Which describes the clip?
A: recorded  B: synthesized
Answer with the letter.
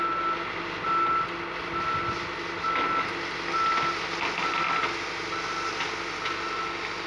A